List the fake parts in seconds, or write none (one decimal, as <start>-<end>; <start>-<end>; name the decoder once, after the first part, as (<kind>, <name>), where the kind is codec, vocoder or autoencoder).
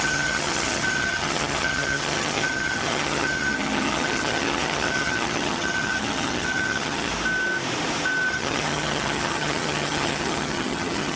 0.0-7.1 (vocoder, HiFi-GAN); 8.3-11.2